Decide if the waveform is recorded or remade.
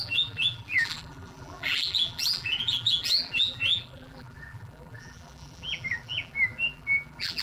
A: remade